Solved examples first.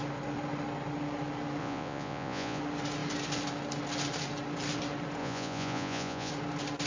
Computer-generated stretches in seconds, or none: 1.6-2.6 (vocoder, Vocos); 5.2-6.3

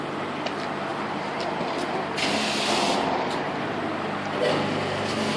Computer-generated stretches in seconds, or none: none

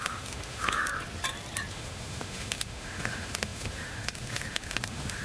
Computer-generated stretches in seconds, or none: 0.0-0.9 (autoencoder, DAC-VAE); 1.7-5.2

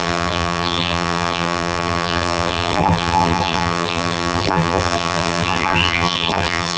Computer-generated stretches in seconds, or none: 0.0-6.8 (vocoder, BigVGAN v2)